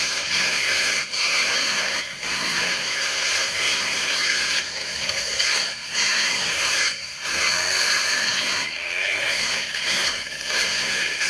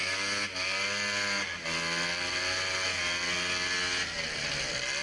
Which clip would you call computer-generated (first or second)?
first